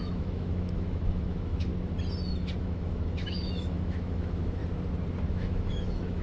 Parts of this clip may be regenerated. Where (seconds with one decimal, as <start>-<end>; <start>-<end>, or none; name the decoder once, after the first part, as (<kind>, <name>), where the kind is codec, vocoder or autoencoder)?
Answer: 0.0-1.7 (autoencoder, DAC-VAE); 2.6-4.6; 5.3-6.2